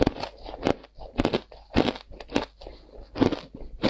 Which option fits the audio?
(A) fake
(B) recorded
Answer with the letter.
B